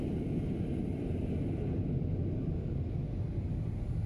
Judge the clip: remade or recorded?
recorded